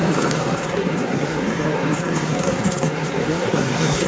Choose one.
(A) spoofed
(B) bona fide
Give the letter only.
A